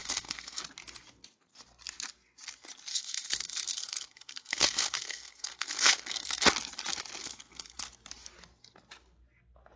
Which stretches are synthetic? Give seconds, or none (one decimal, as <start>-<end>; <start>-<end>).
0.0-0.6; 2.9-6.4; 7.2-7.8